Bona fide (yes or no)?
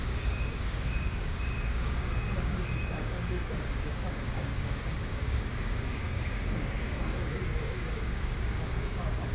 no